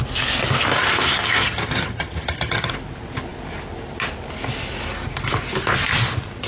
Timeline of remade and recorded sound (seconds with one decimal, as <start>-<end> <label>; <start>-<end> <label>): 0.0-1.4 recorded; 1.4-2.7 remade; 2.7-6.5 recorded